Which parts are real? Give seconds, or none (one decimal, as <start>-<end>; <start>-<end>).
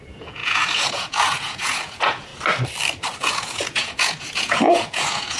2.3-3.2